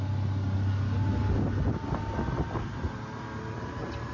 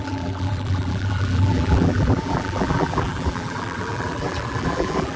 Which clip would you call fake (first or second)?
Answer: second